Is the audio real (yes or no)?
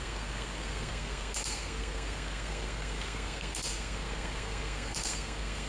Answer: no